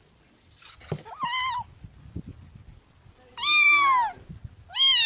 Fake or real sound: real